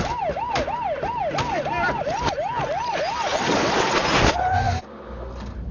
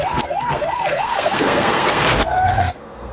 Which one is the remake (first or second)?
second